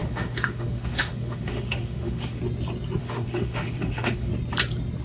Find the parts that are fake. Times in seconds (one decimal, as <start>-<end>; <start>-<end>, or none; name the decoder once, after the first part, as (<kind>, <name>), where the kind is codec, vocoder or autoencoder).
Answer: 0.0-2.4 (autoencoder, DAC-VAE); 3.0-4.3